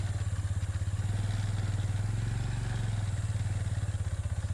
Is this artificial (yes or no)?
no